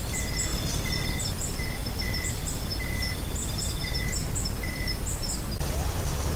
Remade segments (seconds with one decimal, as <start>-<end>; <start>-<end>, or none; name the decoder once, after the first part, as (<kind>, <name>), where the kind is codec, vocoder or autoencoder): 0.5-1.2 (vocoder, BigVGAN v2); 1.8-2.5; 3.4-5.3